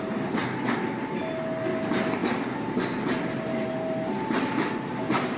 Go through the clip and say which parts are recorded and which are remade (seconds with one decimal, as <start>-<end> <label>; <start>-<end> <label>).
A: 0.0-5.4 recorded